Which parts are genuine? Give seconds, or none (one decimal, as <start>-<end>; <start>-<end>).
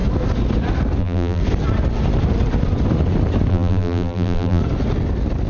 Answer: 0.0-1.0; 1.4-3.5; 4.6-5.5